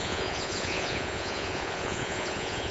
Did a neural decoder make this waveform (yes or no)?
yes